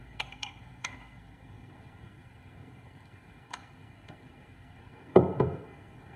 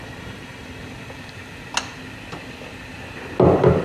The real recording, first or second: second